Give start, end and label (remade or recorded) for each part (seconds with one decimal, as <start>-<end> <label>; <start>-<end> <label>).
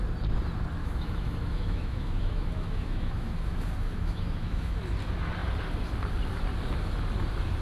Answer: 0.0-0.8 recorded; 0.8-4.8 remade; 4.8-7.6 recorded